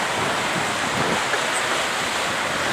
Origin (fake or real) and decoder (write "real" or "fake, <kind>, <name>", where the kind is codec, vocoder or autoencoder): real